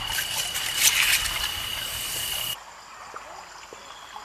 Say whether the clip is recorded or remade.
recorded